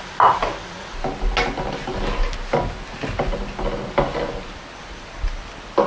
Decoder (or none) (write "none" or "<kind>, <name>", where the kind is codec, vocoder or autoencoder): none